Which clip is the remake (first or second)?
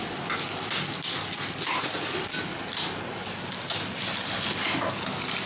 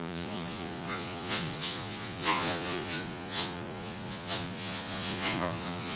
second